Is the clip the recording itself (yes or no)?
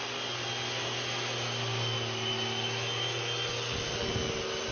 yes